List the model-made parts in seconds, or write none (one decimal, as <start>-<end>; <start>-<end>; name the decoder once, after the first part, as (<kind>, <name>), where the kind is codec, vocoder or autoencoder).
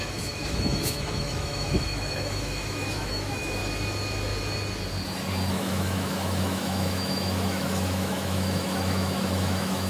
0.0-3.6 (autoencoder, DAC-VAE); 5.5-9.9